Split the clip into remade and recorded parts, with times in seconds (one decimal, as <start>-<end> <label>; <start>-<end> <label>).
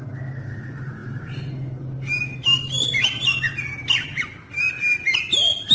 0.0-5.7 recorded